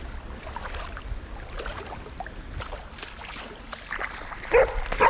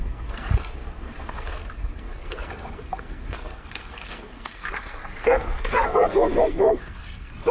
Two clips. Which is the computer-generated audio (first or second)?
second